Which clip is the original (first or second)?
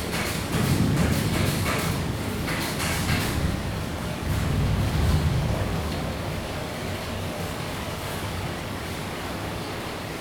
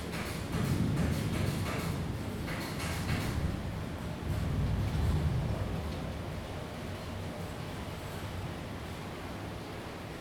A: second